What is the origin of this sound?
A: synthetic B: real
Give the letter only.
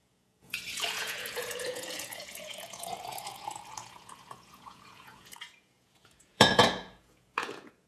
A